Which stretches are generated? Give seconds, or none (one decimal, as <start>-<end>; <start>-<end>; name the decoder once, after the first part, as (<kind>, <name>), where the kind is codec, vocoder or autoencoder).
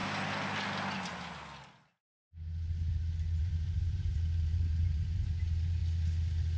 3.4-5.8 (vocoder, BigVGAN v2)